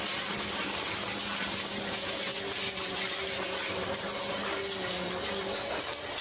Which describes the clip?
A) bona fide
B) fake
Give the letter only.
A